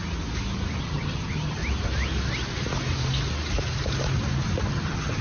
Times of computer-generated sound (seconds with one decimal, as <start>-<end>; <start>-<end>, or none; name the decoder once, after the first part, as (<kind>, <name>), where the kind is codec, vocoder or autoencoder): 0.8-1.6 (vocoder, HiFi-GAN); 4.7-5.2